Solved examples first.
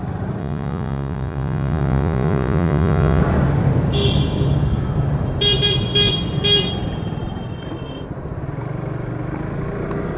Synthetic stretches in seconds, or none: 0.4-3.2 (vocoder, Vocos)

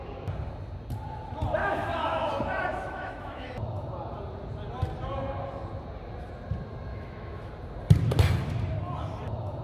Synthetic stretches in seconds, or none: 1.6-2.3 (autoencoder, DAC-VAE); 2.7-3.5; 6.9-7.5

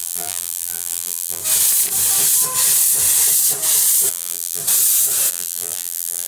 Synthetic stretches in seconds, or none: 0.0-1.4 (vocoder, BigVGAN v2); 4.1-4.6; 5.3-6.3

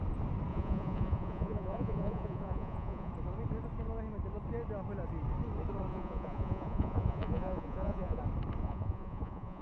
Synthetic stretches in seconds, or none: 0.5-3.1 (vocoder, Vocos); 5.9-8.2; 8.6-9.6

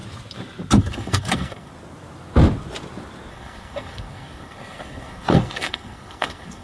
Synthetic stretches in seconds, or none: 0.8-1.7 (codec, SNAC); 3.3-6.6

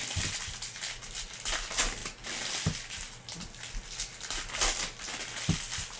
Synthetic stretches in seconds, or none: none

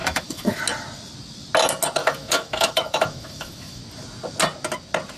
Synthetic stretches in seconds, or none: 0.0-0.6 (autoencoder, DAC-VAE); 2.0-3.8